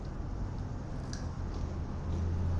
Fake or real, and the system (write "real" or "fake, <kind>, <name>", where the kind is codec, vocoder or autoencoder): real